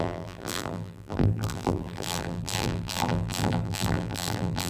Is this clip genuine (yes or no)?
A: no